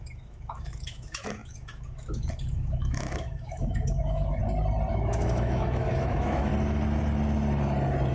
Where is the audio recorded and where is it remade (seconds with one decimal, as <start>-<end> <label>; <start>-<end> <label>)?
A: 0.0-4.4 remade; 4.4-4.9 recorded; 4.9-6.5 remade; 6.5-8.1 recorded